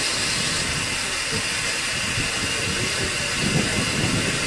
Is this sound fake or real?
real